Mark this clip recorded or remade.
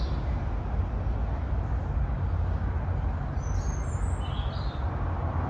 recorded